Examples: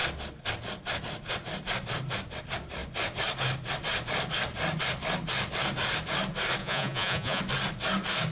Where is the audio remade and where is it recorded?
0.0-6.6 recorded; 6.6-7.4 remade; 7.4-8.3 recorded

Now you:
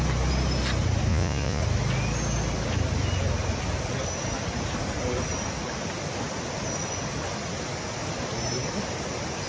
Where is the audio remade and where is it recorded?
0.0-1.1 recorded; 1.1-1.6 remade; 1.6-9.5 recorded

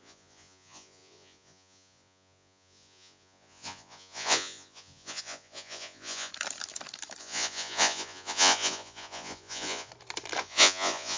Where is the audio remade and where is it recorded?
0.0-6.3 remade; 6.3-7.2 recorded; 7.2-9.9 remade; 9.9-10.4 recorded; 10.4-11.2 remade

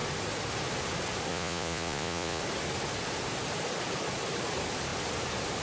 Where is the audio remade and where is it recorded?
0.0-1.3 recorded; 1.3-2.4 remade; 2.4-5.6 recorded

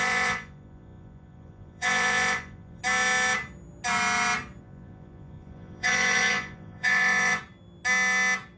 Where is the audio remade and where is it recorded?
0.0-2.8 remade; 2.8-4.6 recorded; 4.6-7.4 remade; 7.4-8.6 recorded